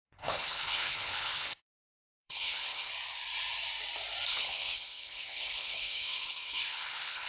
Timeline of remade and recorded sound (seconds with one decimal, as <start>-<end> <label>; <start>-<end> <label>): 0.0-2.9 remade; 2.9-4.3 recorded; 4.3-7.3 remade